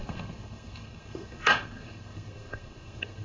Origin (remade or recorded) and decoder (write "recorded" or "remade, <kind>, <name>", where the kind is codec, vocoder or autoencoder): remade, codec, SNAC